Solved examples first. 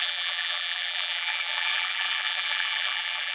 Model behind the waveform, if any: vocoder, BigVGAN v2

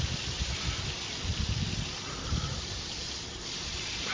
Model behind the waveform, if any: none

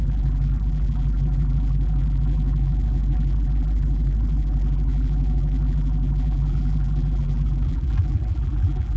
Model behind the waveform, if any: vocoder, BigVGAN v2